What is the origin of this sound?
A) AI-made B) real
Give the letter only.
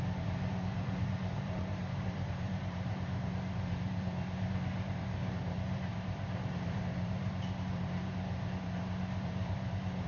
A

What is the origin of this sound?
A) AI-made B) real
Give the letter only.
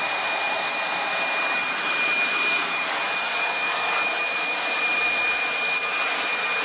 A